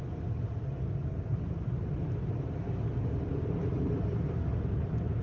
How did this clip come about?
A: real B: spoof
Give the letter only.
A